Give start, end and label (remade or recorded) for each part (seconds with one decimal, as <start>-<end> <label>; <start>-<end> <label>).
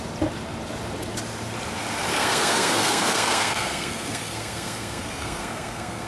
0.0-2.1 recorded; 2.1-6.1 remade